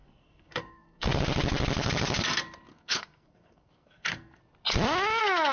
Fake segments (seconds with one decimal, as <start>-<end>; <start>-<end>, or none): 0.0-1.2; 2.7-4.4